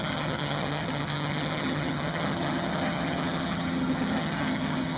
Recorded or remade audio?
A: remade